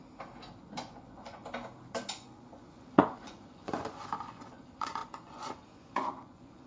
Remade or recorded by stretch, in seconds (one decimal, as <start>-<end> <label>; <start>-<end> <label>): 0.0-0.6 recorded; 0.6-1.4 remade; 1.4-2.1 recorded; 2.1-6.7 remade